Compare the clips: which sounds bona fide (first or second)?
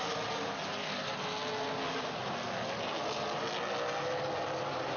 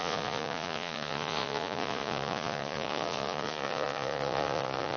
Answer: first